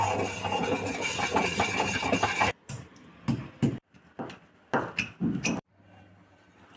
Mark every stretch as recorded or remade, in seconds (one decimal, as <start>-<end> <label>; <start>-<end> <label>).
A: 0.0-0.6 recorded; 0.6-2.9 remade; 2.9-5.2 recorded; 5.2-5.7 remade; 5.7-6.8 recorded

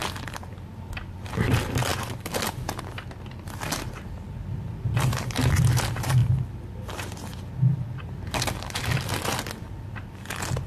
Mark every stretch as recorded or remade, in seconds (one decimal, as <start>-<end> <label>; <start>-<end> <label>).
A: 0.0-10.7 recorded